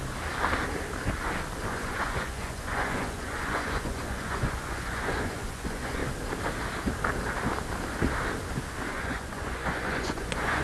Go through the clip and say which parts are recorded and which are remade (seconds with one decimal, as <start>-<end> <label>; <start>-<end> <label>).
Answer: 0.0-1.7 recorded; 1.7-6.0 remade; 6.0-8.9 recorded; 8.9-10.6 remade